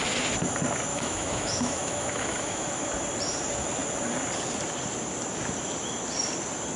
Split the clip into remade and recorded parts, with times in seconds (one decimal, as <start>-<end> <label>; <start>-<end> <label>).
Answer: 0.0-0.9 recorded; 0.9-2.9 remade; 2.9-6.8 recorded